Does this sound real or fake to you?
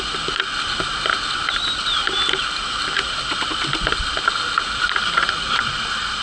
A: real